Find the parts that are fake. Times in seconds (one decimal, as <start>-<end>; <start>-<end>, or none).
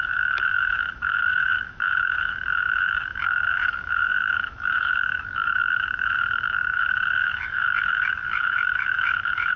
0.0-9.6